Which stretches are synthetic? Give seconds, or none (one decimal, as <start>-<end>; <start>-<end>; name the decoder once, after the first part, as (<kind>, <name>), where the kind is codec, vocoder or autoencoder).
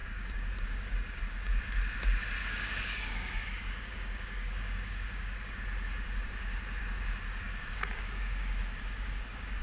0.0-1.6 (codec, DAC); 2.4-5.6; 6.8-9.6